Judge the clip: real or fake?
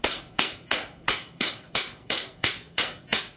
fake